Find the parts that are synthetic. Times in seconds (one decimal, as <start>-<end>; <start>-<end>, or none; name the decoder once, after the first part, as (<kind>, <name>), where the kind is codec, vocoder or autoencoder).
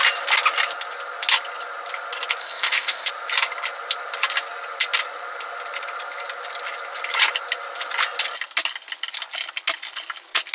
2.4-3.1 (codec, ZipCodec)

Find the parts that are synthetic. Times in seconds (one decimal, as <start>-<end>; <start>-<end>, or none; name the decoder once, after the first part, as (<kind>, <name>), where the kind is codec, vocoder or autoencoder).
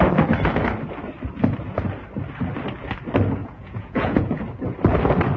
3.4-4.4 (vocoder, Vocos)